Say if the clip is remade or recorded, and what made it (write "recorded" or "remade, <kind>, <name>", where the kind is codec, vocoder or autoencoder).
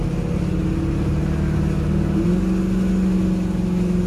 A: recorded